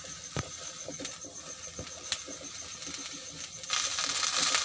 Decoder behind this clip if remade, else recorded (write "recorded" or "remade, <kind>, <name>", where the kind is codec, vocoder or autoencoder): recorded